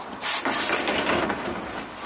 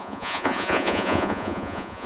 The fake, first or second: second